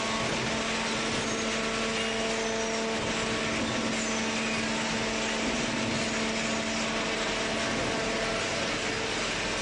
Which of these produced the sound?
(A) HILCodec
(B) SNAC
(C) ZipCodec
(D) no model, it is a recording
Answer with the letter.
D